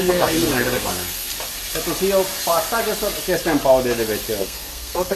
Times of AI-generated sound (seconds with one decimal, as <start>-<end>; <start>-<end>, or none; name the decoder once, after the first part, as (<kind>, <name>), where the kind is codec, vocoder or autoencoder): 0.0-1.3 (codec, SNAC); 4.4-5.2